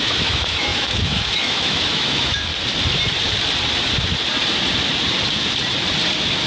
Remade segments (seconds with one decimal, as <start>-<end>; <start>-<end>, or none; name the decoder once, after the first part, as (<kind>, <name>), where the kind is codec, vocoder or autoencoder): 0.0-2.5 (autoencoder, DAC-VAE)